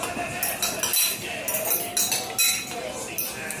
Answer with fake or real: real